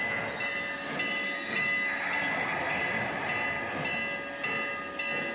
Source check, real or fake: real